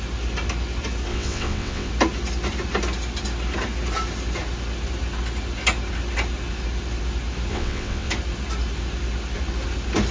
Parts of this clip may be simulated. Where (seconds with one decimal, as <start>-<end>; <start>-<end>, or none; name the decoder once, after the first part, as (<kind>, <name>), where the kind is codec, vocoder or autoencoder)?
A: 1.1-1.9 (vocoder, WaveNeXt); 7.5-8.1